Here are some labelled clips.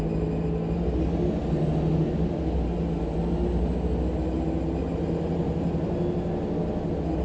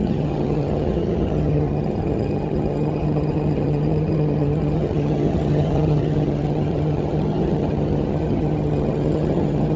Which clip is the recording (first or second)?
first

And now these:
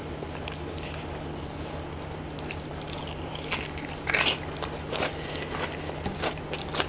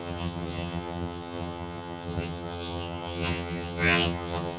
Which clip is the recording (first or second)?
first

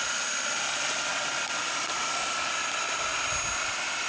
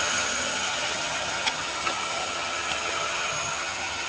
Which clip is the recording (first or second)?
first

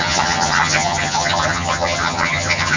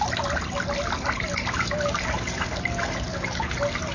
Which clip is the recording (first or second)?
second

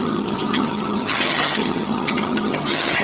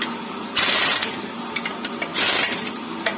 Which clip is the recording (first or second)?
second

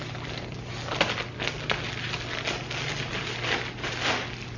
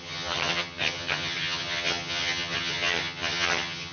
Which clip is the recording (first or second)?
first